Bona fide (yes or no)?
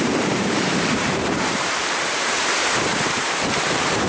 no